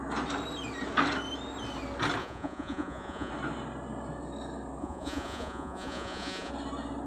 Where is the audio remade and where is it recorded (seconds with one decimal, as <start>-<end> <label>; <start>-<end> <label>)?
0.0-2.2 recorded; 2.2-3.3 remade; 3.3-4.8 recorded; 4.8-6.5 remade; 6.5-7.1 recorded

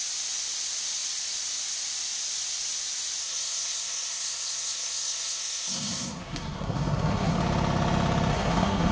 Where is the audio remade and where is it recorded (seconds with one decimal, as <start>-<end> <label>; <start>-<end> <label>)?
0.0-3.2 recorded; 3.2-7.4 remade; 7.4-8.3 recorded; 8.3-8.9 remade

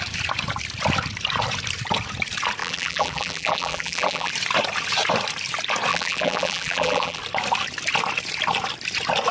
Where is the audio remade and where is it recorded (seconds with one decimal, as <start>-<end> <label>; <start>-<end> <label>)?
0.0-2.6 recorded; 2.6-4.3 remade; 4.3-5.9 recorded; 5.9-7.2 remade; 7.2-9.3 recorded

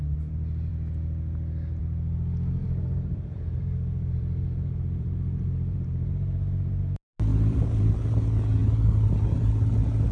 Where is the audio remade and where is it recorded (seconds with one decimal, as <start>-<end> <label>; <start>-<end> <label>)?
0.0-2.6 recorded; 2.6-6.8 remade; 6.8-7.3 recorded; 7.3-7.9 remade; 7.9-10.1 recorded

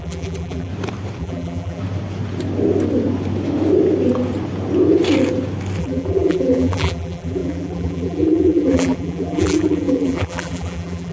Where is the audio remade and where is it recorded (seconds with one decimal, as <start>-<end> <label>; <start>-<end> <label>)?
0.0-0.7 remade; 0.7-1.2 recorded; 1.2-1.8 remade; 1.8-5.8 recorded; 5.8-11.1 remade

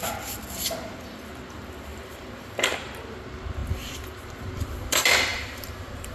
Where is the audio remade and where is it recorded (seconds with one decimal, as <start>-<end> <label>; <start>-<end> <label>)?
0.0-1.9 recorded; 1.9-3.0 remade; 3.0-5.3 recorded; 5.3-6.1 remade

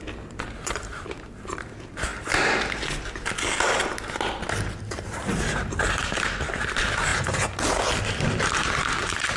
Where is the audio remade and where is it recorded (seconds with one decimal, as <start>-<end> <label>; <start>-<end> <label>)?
0.0-2.1 remade; 2.1-4.8 recorded; 4.8-7.1 remade; 7.1-8.5 recorded; 8.5-9.4 remade

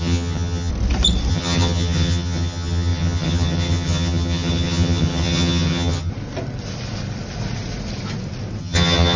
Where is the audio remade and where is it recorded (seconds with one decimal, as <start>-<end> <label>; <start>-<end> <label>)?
0.0-0.7 remade; 0.7-1.3 recorded; 1.3-6.1 remade; 6.1-8.6 recorded; 8.6-9.2 remade